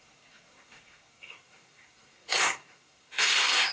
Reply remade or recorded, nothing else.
remade